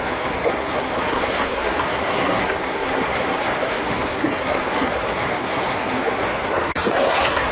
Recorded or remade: remade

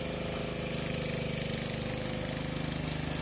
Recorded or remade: recorded